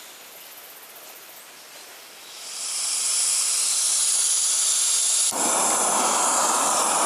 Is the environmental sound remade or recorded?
recorded